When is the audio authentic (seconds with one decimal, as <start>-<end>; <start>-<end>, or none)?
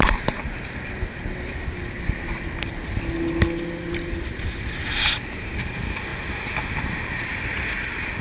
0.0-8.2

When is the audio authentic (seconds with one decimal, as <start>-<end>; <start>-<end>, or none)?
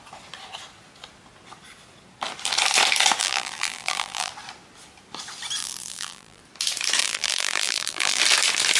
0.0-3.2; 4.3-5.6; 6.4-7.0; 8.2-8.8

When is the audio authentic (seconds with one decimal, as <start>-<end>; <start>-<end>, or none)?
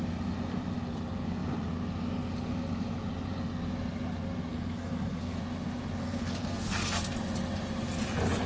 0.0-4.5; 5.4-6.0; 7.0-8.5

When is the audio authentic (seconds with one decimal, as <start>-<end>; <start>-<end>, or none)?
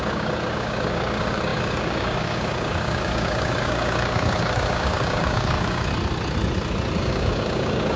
5.9-7.0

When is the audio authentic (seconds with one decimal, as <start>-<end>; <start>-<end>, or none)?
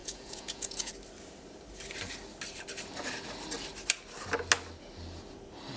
0.9-5.8